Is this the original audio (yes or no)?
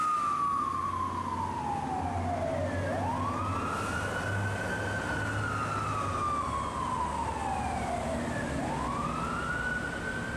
yes